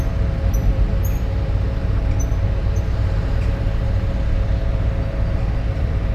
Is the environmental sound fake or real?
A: fake